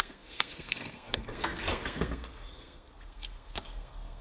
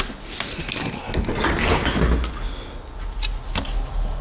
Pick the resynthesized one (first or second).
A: first